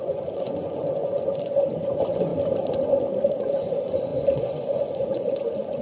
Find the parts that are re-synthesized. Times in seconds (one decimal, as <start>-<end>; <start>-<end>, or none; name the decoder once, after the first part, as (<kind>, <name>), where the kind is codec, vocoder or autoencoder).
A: 0.0-2.3 (vocoder, Vocos); 3.3-5.8

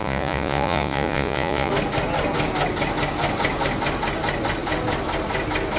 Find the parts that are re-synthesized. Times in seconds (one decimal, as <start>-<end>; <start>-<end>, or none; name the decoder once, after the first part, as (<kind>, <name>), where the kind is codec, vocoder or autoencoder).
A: 0.0-1.7 (vocoder, Vocos)

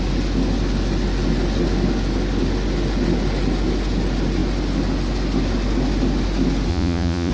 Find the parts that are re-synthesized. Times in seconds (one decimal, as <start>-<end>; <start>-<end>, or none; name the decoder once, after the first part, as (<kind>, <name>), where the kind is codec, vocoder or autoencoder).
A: 6.7-7.3 (vocoder, Vocos)

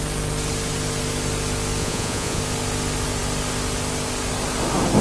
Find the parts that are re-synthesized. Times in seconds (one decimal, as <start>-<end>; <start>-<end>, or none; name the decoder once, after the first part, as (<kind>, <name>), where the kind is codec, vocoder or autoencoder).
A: 1.8-2.4 (vocoder, Vocos)